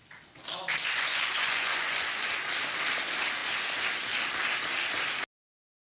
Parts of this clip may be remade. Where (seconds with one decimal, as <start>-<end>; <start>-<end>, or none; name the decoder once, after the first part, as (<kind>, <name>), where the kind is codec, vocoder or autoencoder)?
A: 0.7-2.3 (vocoder, Vocos)